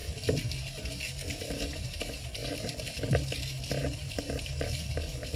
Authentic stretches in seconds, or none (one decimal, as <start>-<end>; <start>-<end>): 0.0-5.4

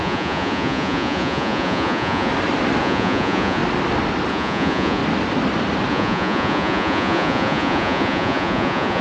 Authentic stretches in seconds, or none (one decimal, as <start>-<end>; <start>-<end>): 2.3-2.8; 3.6-4.3; 5.0-5.9